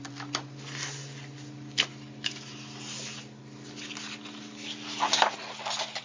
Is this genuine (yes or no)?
yes